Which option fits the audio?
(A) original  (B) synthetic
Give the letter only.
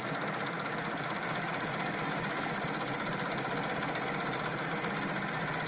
B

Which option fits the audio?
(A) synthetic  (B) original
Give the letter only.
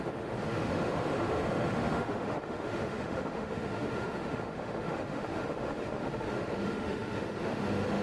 A